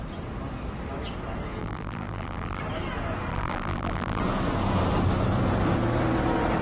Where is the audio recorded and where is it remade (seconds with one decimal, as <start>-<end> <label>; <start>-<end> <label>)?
0.0-1.6 recorded; 1.6-2.6 remade; 2.6-3.3 recorded; 3.3-4.2 remade; 4.2-6.6 recorded